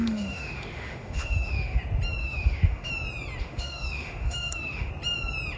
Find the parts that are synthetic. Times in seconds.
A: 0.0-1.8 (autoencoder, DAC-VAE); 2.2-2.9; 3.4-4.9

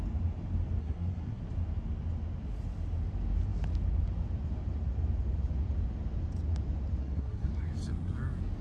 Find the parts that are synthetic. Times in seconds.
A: 0.8-1.4 (codec, SNAC); 7.0-7.5

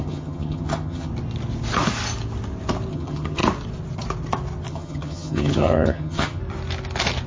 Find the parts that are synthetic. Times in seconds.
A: 0.0-1.1 (vocoder, HiFi-GAN); 2.9-3.4; 4.7-6.4

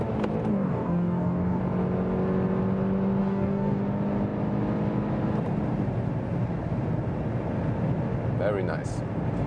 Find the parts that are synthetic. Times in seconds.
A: 0.5-1.6 (codec, DAC); 3.2-3.8